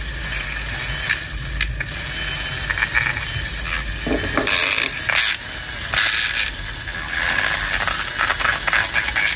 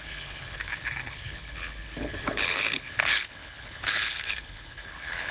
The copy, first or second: second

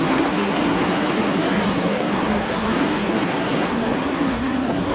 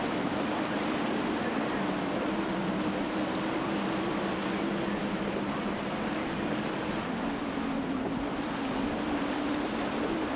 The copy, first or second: first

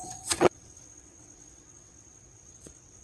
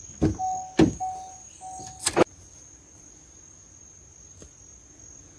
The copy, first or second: first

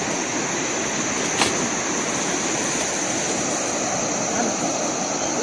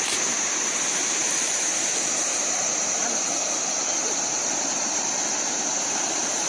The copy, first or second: second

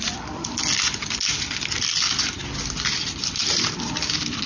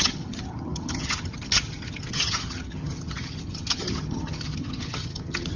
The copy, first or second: second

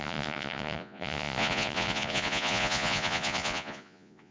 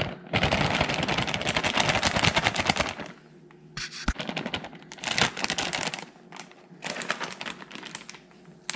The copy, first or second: first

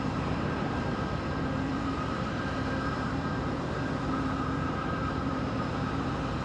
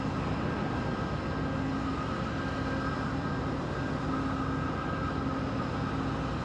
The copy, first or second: first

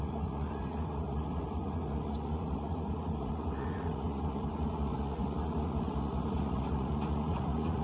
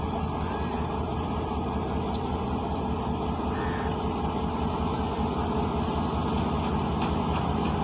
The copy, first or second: first